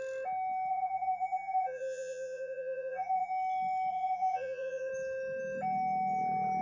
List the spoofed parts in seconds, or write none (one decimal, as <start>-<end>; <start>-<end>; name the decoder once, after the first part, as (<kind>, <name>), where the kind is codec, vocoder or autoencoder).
0.7-3.3 (vocoder, Vocos); 3.9-4.9